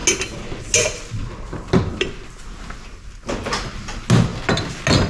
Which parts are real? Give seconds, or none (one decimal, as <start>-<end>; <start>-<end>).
0.0-5.1